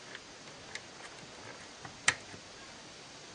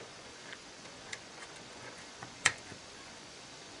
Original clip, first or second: first